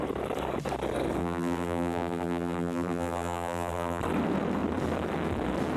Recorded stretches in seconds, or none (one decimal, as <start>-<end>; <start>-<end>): 0.0-1.2; 4.0-5.8